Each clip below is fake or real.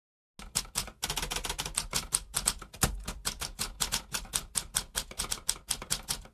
real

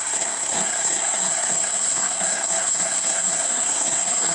fake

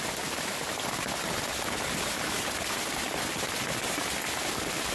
real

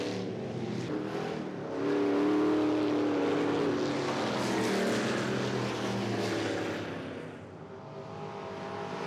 real